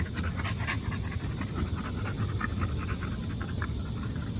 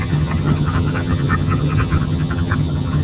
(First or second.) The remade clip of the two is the second